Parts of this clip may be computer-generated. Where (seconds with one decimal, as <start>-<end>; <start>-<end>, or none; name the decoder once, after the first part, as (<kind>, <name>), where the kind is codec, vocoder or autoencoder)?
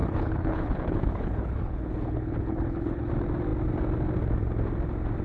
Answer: 0.0-3.1 (codec, HILCodec)